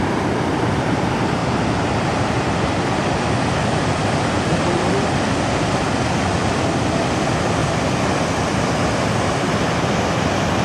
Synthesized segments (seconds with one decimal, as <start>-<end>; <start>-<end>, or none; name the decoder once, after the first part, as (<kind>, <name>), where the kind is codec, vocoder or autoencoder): 0.0-7.6 (vocoder, BigVGAN v2); 9.5-10.6